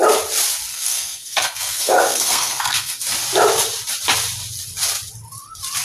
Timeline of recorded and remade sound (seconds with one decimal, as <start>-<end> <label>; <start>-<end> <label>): 0.0-0.7 recorded; 0.7-3.0 remade; 3.0-5.8 recorded

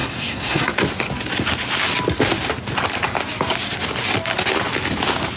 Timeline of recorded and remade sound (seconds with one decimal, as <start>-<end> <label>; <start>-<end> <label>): 0.0-0.7 remade; 0.7-5.4 recorded

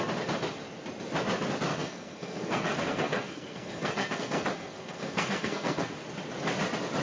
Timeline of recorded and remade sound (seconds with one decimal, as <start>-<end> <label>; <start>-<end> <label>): 0.0-1.7 recorded; 1.7-5.9 remade; 5.9-7.0 recorded